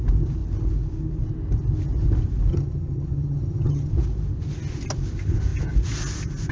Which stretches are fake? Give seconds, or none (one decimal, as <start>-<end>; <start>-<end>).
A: 2.5-3.9